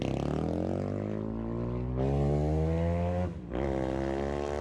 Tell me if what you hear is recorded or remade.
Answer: recorded